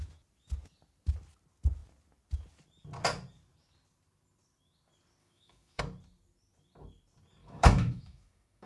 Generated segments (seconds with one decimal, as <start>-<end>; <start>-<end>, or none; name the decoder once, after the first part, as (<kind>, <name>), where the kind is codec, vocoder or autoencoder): 5.2-5.8 (autoencoder, DAC-VAE); 7.4-8.7